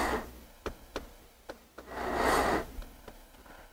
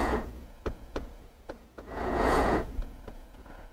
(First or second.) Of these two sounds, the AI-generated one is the second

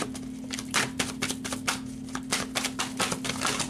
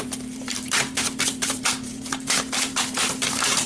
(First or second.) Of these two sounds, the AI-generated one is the second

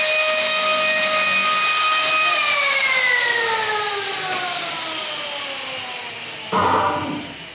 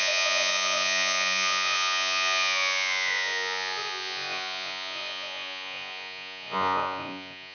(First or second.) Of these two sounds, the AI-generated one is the second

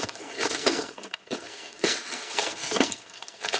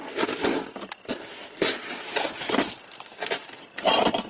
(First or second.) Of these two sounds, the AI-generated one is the first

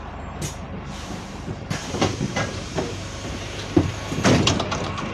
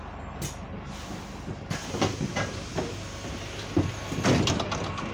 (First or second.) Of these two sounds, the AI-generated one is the first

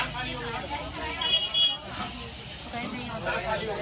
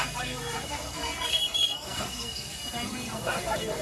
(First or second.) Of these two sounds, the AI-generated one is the second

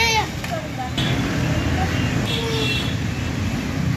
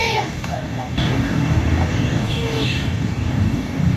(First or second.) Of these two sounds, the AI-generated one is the second